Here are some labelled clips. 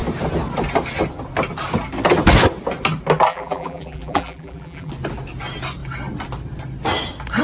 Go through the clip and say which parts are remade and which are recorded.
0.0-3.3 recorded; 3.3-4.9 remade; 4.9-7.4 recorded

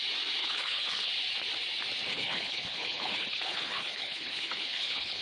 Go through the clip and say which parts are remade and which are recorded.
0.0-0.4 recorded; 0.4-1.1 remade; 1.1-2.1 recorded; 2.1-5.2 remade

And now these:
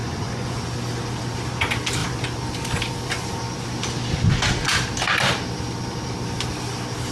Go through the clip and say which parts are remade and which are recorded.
0.0-0.6 remade; 0.6-7.1 recorded

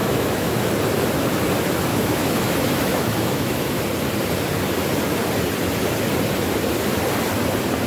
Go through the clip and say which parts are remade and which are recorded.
0.0-0.7 remade; 0.7-1.9 recorded; 1.9-3.8 remade; 3.8-7.9 recorded

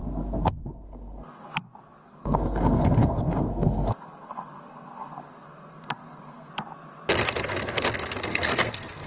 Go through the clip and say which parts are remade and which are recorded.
0.0-1.5 remade; 1.5-2.0 recorded; 2.0-6.5 remade; 6.5-8.3 recorded; 8.3-9.1 remade

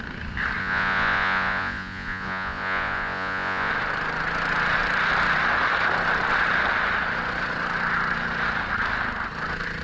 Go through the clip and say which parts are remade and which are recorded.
0.0-0.6 recorded; 0.6-3.7 remade; 3.7-9.8 recorded

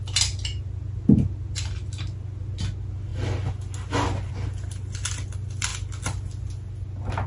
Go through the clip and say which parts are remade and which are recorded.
0.0-7.3 recorded

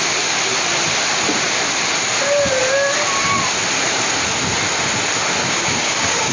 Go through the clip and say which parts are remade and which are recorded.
0.0-5.4 recorded; 5.4-6.3 remade